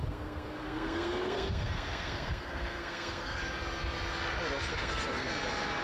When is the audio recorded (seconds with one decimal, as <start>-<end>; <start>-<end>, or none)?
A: 3.4-4.7; 5.3-5.8